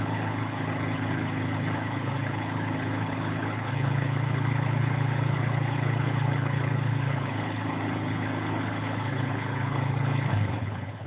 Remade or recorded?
remade